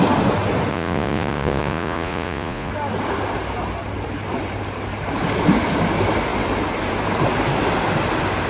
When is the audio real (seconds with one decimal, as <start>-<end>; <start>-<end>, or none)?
0.0-0.7; 2.7-8.5